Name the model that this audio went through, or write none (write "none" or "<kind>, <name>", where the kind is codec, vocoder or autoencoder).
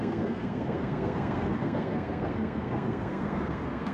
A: codec, SNAC